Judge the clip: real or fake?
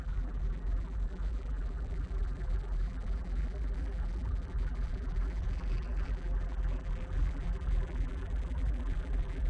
fake